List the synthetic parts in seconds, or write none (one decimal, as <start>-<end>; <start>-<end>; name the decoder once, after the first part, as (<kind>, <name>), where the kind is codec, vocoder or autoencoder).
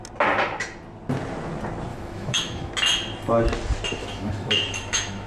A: 1.9-2.7 (autoencoder, DAC-VAE); 4.0-5.3